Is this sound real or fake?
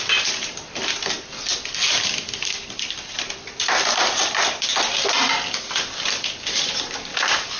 fake